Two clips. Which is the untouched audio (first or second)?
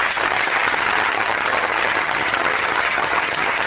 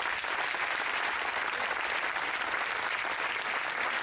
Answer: second